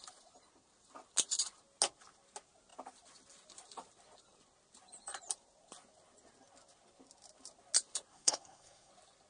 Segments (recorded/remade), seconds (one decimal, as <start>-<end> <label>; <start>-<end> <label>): 0.0-8.1 recorded; 8.1-8.9 remade; 8.9-9.3 recorded